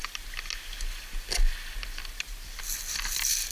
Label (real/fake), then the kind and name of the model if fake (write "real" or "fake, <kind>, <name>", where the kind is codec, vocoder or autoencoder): real